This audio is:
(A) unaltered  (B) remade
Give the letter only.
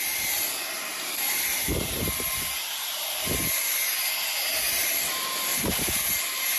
B